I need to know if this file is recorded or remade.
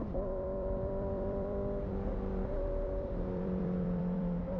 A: remade